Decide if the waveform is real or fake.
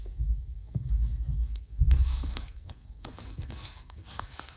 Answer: fake